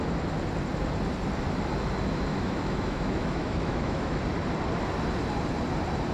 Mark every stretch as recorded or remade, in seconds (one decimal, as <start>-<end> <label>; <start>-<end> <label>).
0.0-2.3 recorded; 2.3-4.2 remade; 4.2-6.1 recorded